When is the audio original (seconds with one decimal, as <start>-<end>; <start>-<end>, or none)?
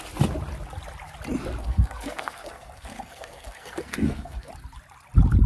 0.0-1.6; 4.5-5.5